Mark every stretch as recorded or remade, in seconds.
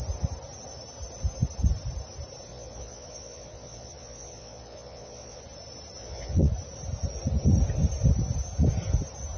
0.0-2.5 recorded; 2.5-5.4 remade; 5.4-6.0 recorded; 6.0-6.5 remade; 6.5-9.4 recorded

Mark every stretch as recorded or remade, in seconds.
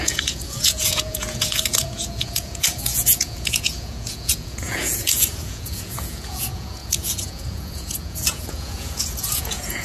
0.0-9.8 remade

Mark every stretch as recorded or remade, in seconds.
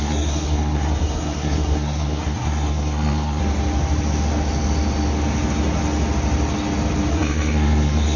0.0-3.4 remade; 3.4-7.1 recorded; 7.1-8.2 remade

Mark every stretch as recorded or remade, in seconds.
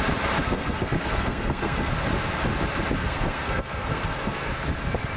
0.0-0.4 recorded; 0.4-1.9 remade; 1.9-3.0 recorded; 3.0-4.5 remade; 4.5-5.2 recorded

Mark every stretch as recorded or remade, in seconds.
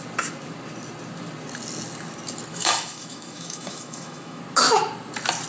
0.0-2.5 recorded; 2.5-4.4 remade; 4.4-5.5 recorded